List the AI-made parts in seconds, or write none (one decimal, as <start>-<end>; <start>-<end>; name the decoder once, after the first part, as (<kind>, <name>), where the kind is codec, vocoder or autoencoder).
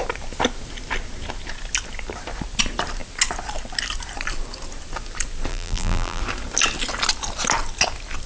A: 5.5-6.2 (vocoder, BigVGAN v2)